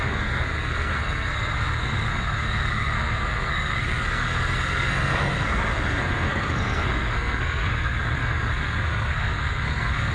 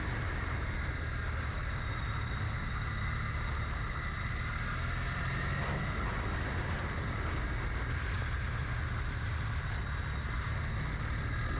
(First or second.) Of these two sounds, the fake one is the first